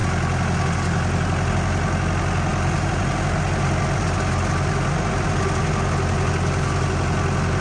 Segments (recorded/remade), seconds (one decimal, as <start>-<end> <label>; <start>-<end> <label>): 0.0-7.6 recorded